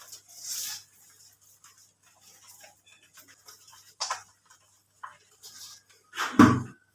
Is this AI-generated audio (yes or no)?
no